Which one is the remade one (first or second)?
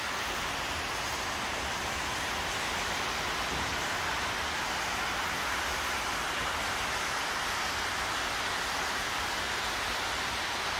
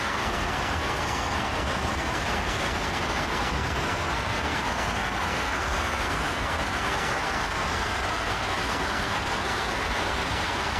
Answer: second